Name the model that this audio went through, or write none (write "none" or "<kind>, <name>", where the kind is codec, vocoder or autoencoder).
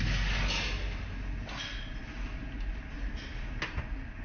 none